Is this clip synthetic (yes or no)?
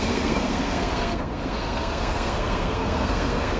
yes